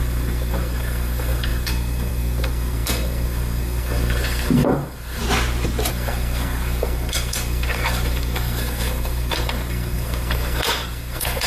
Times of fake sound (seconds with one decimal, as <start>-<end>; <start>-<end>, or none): 0.0-5.2; 5.9-11.5